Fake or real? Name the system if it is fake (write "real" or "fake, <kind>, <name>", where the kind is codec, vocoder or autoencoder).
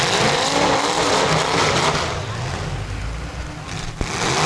real